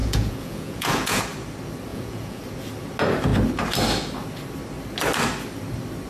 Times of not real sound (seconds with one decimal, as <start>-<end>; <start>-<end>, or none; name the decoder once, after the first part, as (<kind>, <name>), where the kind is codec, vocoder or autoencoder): 0.0-1.2 (vocoder, Vocos); 1.9-2.4